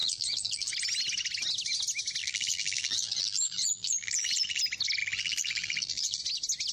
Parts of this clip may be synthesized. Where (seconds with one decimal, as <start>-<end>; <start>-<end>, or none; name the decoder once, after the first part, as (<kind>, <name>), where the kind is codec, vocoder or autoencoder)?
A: 0.0-0.7 (vocoder, BigVGAN v2); 2.2-4.6; 5.0-6.2